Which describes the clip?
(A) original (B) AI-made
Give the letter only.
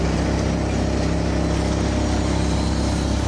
A